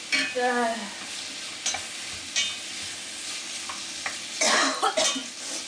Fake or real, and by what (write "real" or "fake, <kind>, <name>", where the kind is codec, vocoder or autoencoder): real